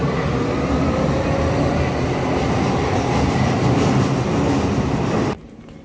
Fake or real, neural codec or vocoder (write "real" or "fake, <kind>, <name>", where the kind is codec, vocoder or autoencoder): real